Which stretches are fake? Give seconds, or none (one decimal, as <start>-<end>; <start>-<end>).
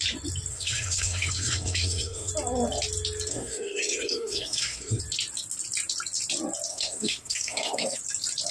0.5-2.3; 3.3-5.0; 6.7-8.0